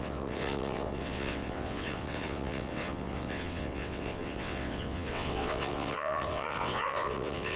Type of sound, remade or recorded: remade